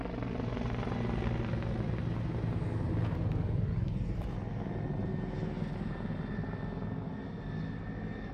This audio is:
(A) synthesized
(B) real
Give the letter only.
B